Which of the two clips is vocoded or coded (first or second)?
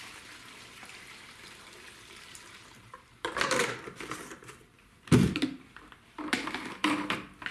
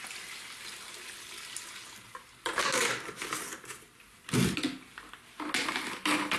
first